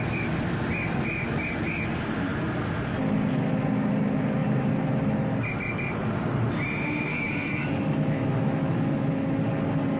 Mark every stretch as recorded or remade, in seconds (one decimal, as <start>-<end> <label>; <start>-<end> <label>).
0.0-7.1 recorded; 7.1-9.5 remade; 9.5-10.0 recorded